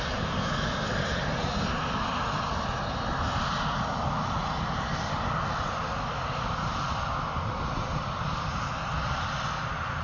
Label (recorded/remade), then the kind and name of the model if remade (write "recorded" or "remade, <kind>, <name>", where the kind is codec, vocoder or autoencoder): recorded